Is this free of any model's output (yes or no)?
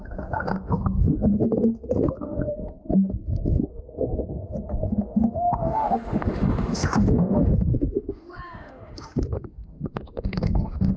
no